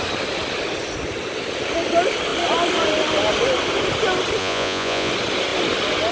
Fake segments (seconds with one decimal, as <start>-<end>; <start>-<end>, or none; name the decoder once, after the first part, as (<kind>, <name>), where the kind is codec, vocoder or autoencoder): 4.4-5.1 (vocoder, Vocos)